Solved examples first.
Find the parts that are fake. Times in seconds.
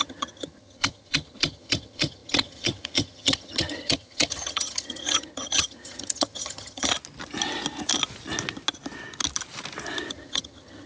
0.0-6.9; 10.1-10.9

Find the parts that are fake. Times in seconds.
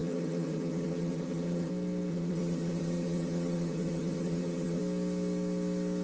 0.0-1.7; 2.1-4.8